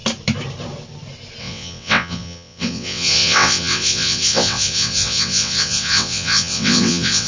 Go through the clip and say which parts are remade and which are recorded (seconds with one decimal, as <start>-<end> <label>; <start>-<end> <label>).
0.0-1.4 recorded; 1.4-7.3 remade